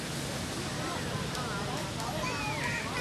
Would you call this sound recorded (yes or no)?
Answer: yes